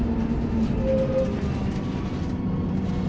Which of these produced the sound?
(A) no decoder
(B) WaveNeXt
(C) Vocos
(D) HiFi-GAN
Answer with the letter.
A